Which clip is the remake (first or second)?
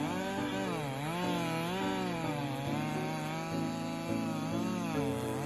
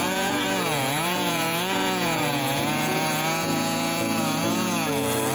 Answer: second